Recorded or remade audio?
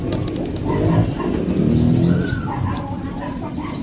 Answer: recorded